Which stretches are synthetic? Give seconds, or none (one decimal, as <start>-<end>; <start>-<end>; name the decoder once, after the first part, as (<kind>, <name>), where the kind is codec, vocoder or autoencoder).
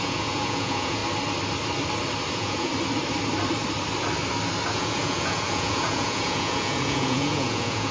0.0-1.0 (vocoder, Vocos); 2.3-2.7; 4.7-7.9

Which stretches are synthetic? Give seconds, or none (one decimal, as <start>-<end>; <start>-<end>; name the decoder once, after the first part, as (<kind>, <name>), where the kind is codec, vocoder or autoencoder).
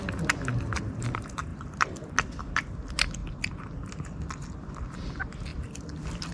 1.5-2.1 (vocoder, BigVGAN v2); 3.2-4.4; 5.5-6.3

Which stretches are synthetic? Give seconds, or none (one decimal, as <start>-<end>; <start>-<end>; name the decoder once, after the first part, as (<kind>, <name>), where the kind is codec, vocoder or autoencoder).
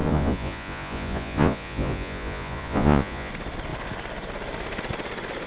0.0-3.3 (vocoder, Vocos)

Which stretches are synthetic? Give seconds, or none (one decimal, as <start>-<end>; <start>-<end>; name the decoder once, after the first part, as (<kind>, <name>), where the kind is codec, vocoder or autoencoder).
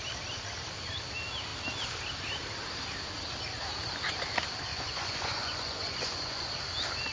4.7-6.5 (vocoder, Vocos)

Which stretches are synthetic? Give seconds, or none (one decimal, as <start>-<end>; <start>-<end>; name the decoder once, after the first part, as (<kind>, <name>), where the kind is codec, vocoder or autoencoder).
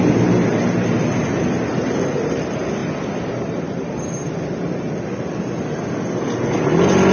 2.8-4.3 (vocoder, BigVGAN v2)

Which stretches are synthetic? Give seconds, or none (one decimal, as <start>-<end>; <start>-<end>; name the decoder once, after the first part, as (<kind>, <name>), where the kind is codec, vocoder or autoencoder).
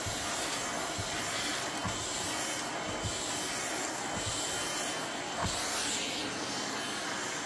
none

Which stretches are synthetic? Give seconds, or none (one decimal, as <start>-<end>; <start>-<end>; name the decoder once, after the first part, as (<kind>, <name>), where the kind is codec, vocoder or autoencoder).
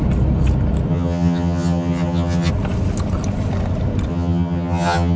0.9-2.5 (vocoder, HiFi-GAN); 4.1-5.2